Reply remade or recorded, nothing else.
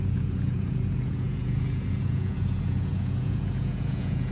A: remade